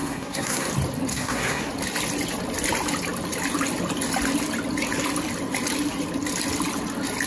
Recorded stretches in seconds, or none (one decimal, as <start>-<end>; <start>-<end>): 0.7-1.1; 1.7-7.3